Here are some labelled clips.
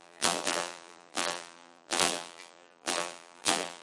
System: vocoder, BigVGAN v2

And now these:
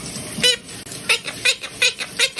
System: none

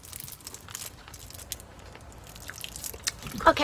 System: none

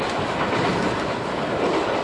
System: none